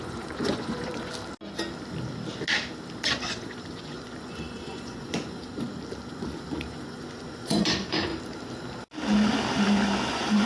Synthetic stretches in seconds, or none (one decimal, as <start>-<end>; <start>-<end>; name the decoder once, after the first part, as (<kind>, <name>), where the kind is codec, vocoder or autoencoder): 0.0-1.1 (vocoder, Vocos); 3.2-5.5; 6.1-8.1; 10.1-10.5